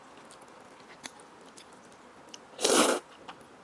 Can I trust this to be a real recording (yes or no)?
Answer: yes